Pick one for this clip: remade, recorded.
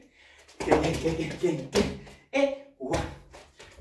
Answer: recorded